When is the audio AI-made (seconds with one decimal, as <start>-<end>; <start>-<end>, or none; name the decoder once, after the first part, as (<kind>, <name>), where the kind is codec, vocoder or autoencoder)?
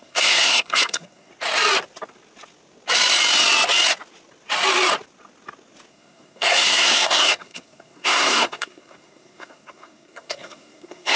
0.0-1.3 (codec, SNAC); 5.9-11.2